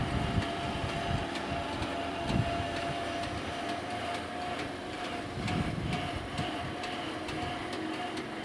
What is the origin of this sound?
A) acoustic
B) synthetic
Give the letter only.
A